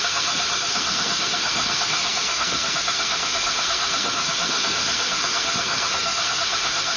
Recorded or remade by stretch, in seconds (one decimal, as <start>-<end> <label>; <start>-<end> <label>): 0.0-7.0 remade